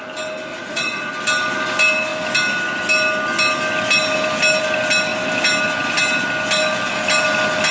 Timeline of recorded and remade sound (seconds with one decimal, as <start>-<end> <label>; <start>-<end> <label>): 0.0-0.5 recorded; 0.5-1.1 remade; 1.1-7.7 recorded